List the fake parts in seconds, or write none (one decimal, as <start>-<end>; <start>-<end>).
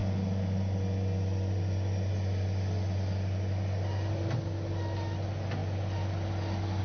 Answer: none